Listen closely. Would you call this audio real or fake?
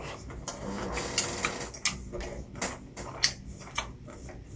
real